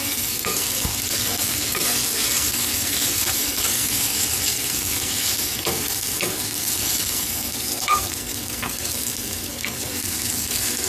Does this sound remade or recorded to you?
remade